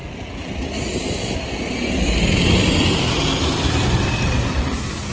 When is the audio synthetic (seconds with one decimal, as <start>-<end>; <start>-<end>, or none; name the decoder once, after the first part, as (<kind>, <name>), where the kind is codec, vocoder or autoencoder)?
0.0-5.1 (vocoder, BigVGAN v2)